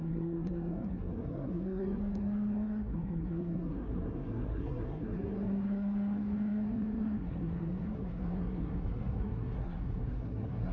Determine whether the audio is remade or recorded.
remade